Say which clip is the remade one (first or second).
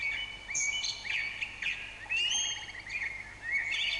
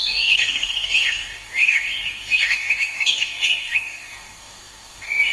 second